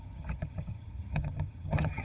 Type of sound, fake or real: fake